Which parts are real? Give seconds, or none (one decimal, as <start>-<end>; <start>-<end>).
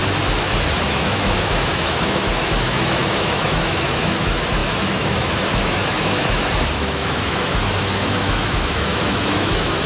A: 0.0-0.8